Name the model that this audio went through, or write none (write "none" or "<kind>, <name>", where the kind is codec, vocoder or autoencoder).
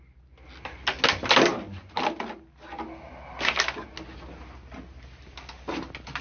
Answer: none